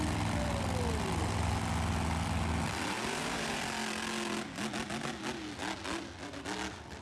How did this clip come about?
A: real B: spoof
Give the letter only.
A